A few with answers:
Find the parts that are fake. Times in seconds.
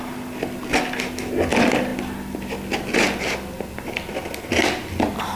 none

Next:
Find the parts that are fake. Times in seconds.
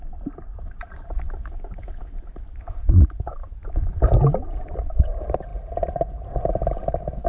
0.0-0.5 (vocoder, BigVGAN v2); 4.3-7.3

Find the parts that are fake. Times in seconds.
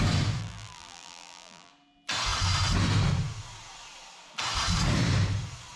0.4-1.7 (vocoder, BigVGAN v2)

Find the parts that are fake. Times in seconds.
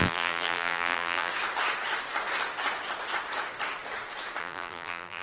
0.0-1.3 (vocoder, BigVGAN v2); 4.4-5.2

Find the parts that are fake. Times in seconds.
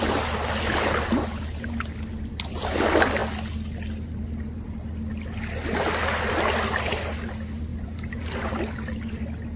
7.7-8.5 (vocoder, BigVGAN v2)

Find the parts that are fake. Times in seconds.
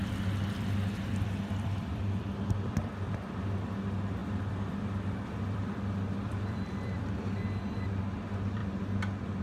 1.1-3.3 (vocoder, BigVGAN v2); 4.2-8.0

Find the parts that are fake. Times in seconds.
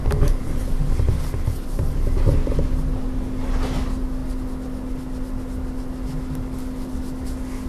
none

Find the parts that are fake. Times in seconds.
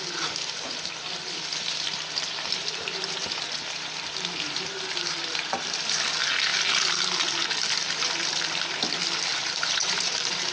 9.3-10.5 (vocoder, BigVGAN v2)